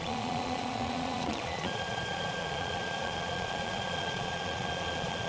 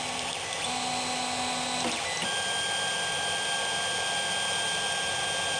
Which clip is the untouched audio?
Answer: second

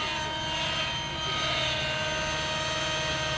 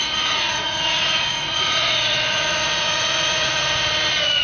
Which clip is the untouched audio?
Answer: first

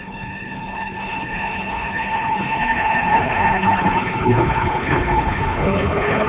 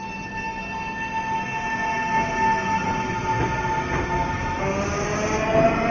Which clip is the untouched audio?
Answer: second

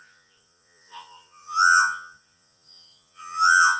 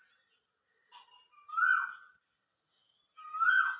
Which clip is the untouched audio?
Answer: second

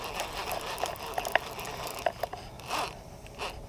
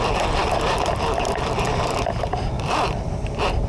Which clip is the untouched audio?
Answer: first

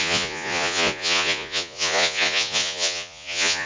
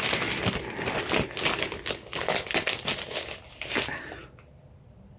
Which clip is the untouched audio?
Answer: second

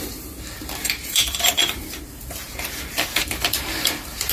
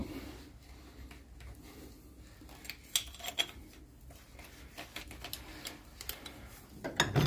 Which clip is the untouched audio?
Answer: second